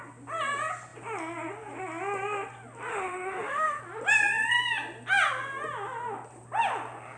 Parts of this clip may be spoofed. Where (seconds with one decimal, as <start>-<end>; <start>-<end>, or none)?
2.9-3.8